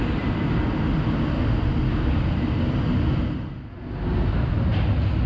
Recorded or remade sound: recorded